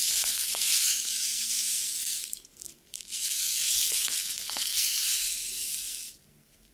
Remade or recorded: remade